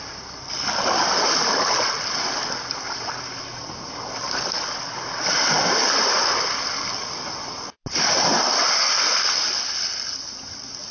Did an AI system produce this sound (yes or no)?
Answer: no